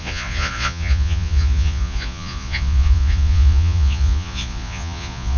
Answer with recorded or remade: remade